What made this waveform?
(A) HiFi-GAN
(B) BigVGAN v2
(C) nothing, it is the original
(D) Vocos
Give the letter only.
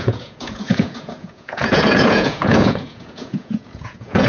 D